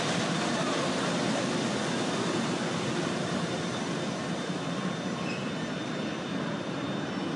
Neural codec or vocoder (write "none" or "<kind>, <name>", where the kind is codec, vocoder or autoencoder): none